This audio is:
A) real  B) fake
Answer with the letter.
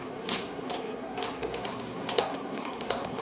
B